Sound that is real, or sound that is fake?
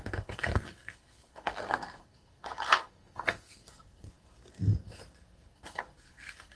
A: fake